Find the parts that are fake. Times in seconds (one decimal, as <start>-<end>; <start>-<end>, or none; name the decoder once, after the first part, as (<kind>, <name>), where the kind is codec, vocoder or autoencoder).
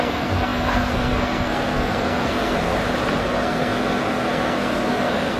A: 0.0-2.7 (codec, SNAC); 3.2-5.4